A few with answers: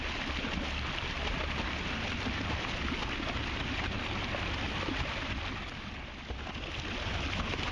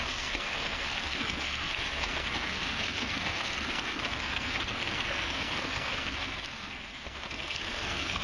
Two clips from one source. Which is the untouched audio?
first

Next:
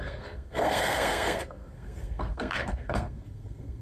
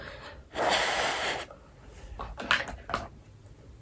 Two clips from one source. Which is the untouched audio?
second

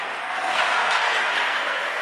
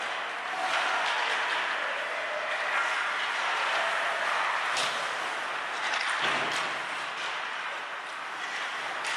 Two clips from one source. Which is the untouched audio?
second